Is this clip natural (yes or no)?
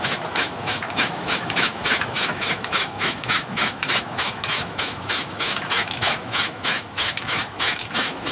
no